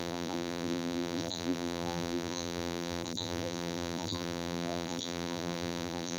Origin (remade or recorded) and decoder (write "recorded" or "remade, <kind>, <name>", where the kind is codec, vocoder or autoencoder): remade, vocoder, BigVGAN v2